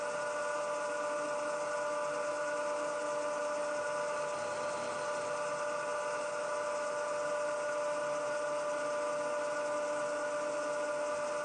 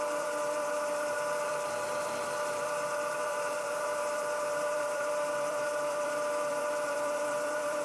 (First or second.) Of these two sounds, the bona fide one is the first